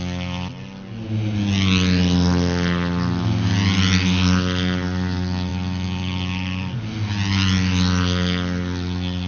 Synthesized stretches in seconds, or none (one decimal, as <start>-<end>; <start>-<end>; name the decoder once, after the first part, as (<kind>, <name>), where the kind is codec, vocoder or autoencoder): none